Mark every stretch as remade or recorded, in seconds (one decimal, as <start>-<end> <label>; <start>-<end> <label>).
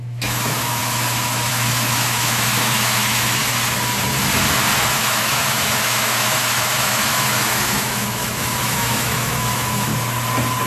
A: 0.0-3.4 remade; 3.4-4.9 recorded; 4.9-9.9 remade; 9.9-10.7 recorded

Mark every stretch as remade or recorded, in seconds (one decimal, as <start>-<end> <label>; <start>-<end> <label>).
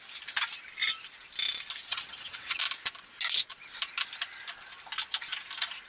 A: 0.0-1.9 recorded; 1.9-2.6 remade; 2.6-5.9 recorded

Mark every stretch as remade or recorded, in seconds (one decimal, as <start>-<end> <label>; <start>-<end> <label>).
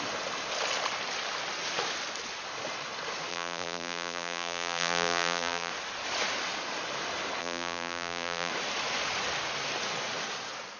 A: 0.0-3.3 recorded; 3.3-5.7 remade; 5.7-7.4 recorded; 7.4-8.5 remade; 8.5-10.8 recorded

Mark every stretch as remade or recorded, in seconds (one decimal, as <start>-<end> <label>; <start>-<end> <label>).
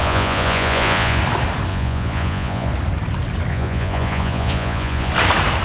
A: 0.0-1.2 remade; 1.2-1.7 recorded; 1.7-2.7 remade; 2.7-3.5 recorded; 3.5-5.1 remade; 5.1-5.6 recorded